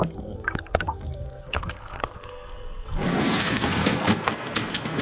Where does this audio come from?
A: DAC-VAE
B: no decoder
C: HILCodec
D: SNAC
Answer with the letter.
D